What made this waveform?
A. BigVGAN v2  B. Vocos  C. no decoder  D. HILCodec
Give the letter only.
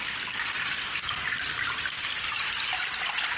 C